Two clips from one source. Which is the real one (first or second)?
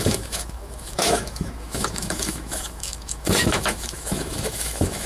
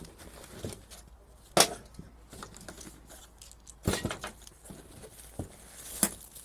second